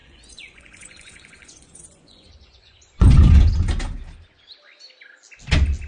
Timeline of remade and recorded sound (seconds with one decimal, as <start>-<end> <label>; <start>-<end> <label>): 0.0-3.5 remade; 3.5-5.9 recorded